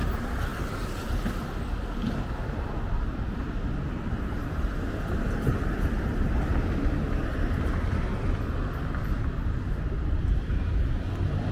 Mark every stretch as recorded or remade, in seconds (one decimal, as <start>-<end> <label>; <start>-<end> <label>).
0.0-11.5 recorded